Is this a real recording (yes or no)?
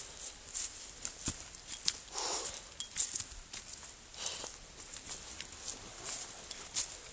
yes